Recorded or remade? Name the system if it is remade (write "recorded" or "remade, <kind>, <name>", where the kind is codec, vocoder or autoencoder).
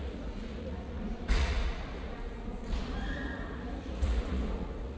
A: remade, vocoder, Vocos